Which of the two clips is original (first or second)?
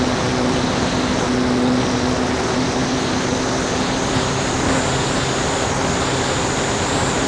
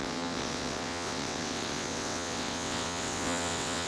first